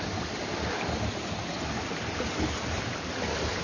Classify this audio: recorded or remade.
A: recorded